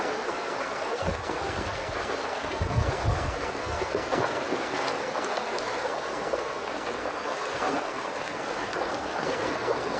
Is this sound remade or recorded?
remade